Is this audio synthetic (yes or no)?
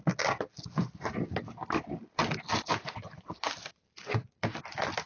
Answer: no